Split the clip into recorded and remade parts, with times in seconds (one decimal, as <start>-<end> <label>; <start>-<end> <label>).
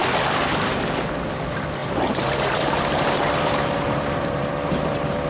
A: 0.0-1.8 recorded; 1.8-5.3 remade